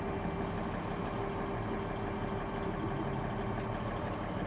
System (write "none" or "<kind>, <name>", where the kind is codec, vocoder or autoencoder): none